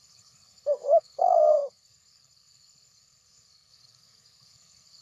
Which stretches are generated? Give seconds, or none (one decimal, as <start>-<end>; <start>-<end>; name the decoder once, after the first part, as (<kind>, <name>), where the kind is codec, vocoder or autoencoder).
0.0-5.0 (codec, SNAC)